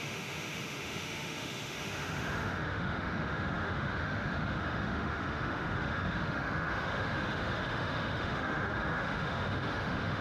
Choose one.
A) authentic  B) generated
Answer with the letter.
B